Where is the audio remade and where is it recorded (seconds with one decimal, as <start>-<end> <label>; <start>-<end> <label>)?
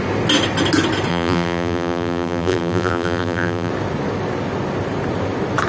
0.0-1.1 recorded; 1.1-3.7 remade; 3.7-5.7 recorded